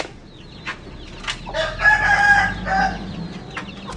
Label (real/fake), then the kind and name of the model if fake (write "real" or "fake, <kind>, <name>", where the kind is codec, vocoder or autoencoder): real